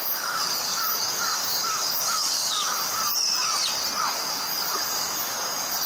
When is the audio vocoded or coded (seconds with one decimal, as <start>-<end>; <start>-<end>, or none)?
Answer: 0.0-3.0; 4.0-5.9